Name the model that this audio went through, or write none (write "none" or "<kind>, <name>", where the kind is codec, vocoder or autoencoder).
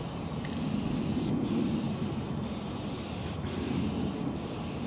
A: none